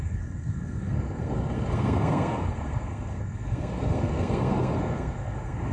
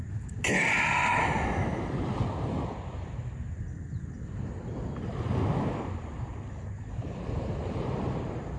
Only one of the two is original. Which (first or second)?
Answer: second